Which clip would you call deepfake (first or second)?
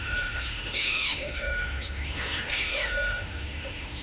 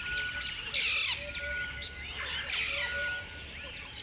first